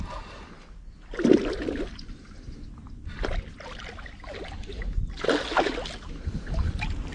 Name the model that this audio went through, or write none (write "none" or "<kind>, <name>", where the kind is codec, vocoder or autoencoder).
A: none